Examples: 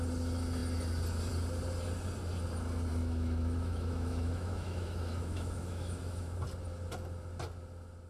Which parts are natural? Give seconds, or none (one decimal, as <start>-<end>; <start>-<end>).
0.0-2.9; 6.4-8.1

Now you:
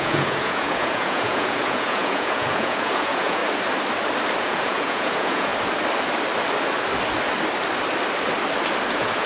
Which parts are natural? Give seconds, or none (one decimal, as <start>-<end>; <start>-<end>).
3.4-4.4; 5.5-8.9

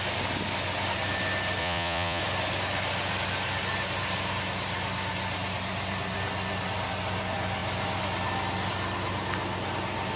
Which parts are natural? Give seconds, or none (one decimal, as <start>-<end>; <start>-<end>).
0.0-1.6; 2.2-10.2